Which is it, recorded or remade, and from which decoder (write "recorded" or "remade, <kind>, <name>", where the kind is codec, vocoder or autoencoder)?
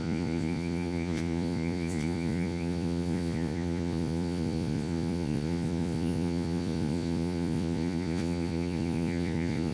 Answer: remade, vocoder, Vocos